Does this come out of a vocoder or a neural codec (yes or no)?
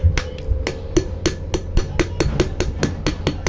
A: no